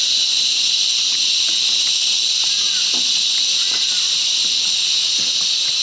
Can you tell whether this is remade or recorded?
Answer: recorded